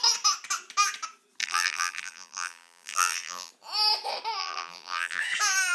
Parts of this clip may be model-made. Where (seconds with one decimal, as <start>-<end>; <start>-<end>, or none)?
1.4-3.5; 4.4-5.2